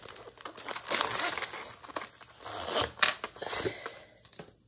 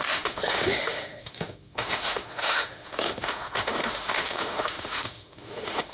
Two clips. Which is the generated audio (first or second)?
second